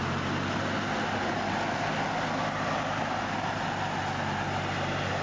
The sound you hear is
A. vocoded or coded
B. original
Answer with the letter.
B